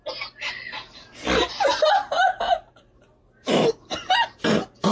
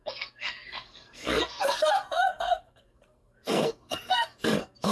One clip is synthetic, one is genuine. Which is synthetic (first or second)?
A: second